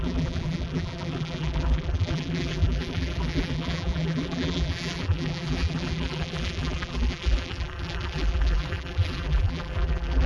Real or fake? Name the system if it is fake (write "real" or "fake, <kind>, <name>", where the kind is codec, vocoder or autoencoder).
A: fake, vocoder, BigVGAN v2